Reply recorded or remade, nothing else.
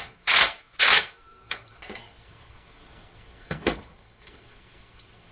remade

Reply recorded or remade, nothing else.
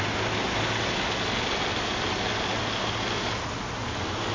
recorded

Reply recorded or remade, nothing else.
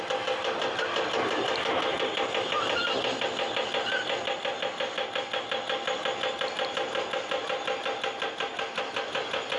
recorded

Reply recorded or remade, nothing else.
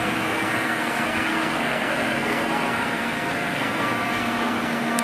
remade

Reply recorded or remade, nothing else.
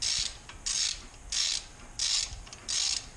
recorded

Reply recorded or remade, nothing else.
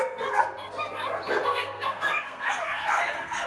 remade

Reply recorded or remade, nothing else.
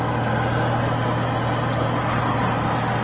recorded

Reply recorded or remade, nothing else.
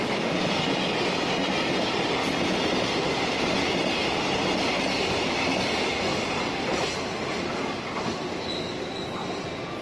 recorded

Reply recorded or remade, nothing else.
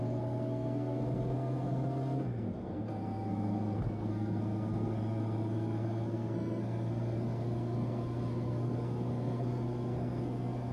remade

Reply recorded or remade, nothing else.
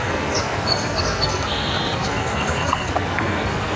remade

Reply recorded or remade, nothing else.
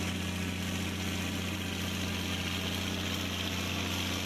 recorded